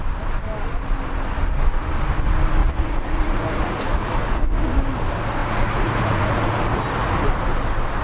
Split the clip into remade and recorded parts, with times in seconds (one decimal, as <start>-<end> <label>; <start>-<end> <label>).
0.0-2.6 recorded; 2.6-4.4 remade; 4.4-5.4 recorded; 5.4-6.8 remade; 6.8-8.0 recorded